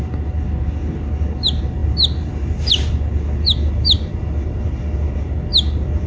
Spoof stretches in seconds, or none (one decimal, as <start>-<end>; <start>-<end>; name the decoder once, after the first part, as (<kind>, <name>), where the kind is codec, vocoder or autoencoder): none

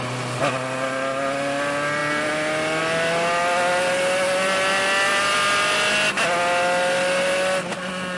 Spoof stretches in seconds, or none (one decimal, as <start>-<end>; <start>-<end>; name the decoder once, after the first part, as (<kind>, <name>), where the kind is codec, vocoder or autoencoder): none

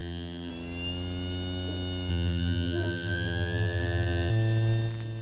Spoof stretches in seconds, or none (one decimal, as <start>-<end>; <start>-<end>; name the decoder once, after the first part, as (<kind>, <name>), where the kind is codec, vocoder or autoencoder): 0.0-0.5 (vocoder, BigVGAN v2); 2.1-4.3